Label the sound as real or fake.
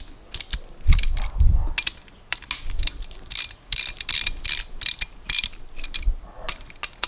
real